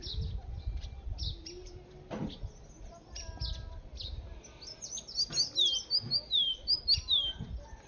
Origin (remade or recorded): recorded